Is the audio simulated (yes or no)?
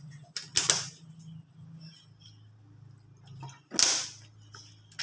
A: no